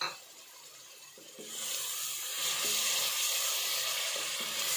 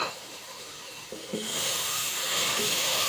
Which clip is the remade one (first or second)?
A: second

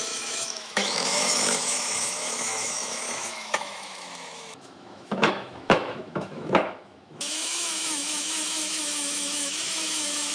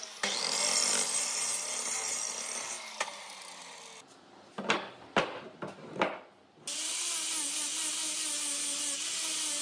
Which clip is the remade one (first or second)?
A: first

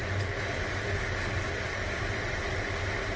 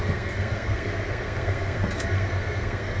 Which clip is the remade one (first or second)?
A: second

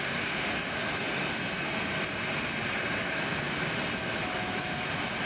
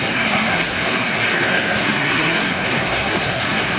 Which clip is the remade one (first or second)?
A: second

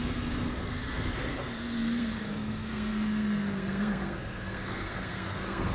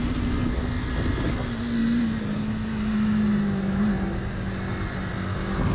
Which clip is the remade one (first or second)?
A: first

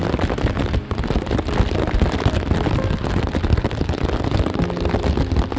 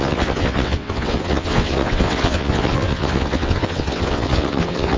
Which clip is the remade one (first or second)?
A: second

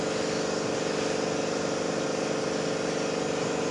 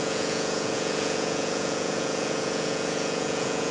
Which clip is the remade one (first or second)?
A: second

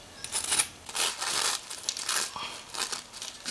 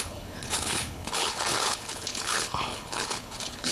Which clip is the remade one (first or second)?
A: second